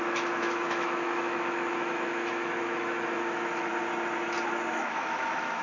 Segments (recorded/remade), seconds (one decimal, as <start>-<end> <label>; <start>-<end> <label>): 0.0-3.7 remade; 3.7-4.7 recorded; 4.7-5.6 remade